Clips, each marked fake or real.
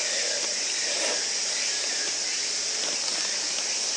real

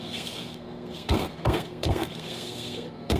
fake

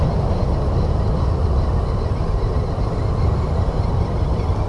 real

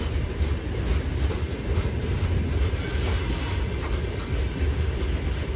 real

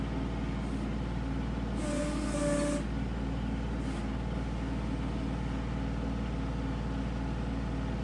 real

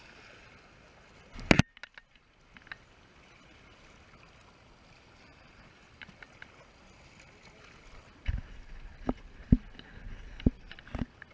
real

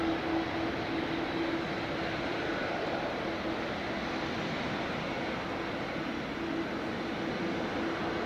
real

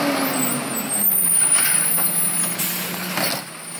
real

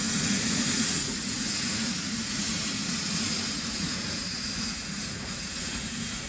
fake